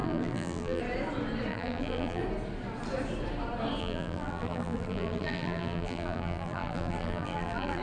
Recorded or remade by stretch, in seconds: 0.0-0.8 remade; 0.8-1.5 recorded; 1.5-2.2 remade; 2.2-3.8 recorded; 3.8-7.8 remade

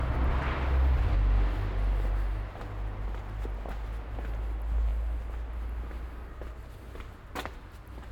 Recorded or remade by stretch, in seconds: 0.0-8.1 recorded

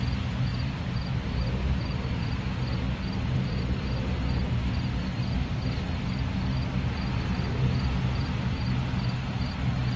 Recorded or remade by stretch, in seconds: 0.0-0.5 recorded; 0.5-3.8 remade; 3.8-10.0 recorded